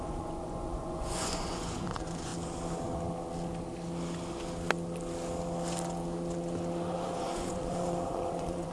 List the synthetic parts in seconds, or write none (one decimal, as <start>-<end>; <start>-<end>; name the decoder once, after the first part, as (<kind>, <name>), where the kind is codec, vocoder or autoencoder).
0.0-2.3 (vocoder, Vocos); 6.9-8.7